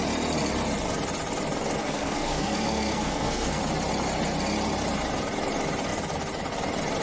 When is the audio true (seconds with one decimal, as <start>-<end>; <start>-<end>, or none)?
0.0-1.8; 3.6-7.0